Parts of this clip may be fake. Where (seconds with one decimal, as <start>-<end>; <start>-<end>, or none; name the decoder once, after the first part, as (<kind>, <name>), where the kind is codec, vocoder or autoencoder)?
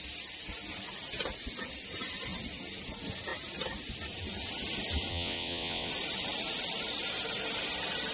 5.1-5.9 (vocoder, WaveNeXt)